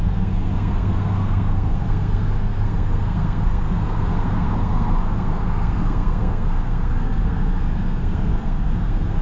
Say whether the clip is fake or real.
fake